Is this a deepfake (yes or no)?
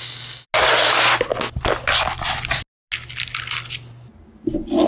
no